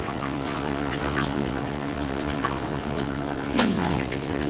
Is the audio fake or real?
fake